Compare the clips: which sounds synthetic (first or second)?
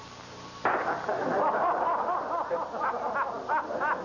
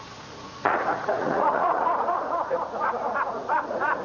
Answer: second